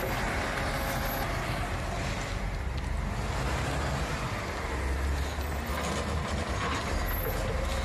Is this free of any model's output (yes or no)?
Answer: yes